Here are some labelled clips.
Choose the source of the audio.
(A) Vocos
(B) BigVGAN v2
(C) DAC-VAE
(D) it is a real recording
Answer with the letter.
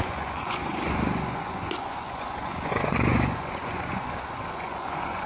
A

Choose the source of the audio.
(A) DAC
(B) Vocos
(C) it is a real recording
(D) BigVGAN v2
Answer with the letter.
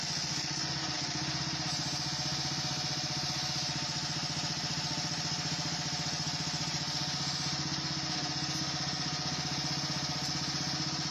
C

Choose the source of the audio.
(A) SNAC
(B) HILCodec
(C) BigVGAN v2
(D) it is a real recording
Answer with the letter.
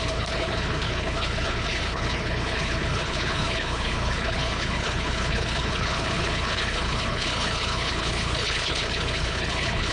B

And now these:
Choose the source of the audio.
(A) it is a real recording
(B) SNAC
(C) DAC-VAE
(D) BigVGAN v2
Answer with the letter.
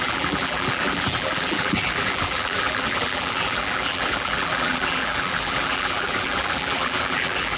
D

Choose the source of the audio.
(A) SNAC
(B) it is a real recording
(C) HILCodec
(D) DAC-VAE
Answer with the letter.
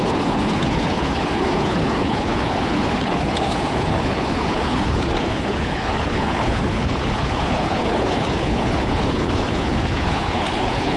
C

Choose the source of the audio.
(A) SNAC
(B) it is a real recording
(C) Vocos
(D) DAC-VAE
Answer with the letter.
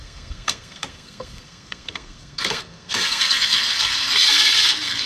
A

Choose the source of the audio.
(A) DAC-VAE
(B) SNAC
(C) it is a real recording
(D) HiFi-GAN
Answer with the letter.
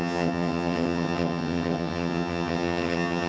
D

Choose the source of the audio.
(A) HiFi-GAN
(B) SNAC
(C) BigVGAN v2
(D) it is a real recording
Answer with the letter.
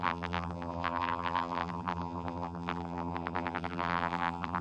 C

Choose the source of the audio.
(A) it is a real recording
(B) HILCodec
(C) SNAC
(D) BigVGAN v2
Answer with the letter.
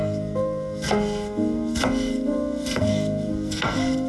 C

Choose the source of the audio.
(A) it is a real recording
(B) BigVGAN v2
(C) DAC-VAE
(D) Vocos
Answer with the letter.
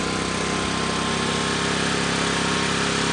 A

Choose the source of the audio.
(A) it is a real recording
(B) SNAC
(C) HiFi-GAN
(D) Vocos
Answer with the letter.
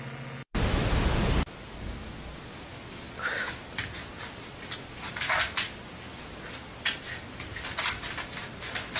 A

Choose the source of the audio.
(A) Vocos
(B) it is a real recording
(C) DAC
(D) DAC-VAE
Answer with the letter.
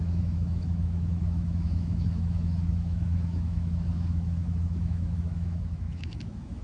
D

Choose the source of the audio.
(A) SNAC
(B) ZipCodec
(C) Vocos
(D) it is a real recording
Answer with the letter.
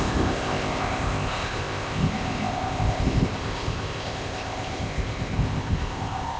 B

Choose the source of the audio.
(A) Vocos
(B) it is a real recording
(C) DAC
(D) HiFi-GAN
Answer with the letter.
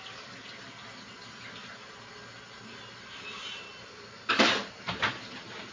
B